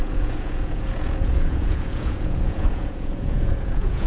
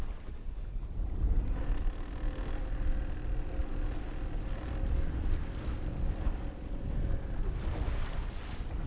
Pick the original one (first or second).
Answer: second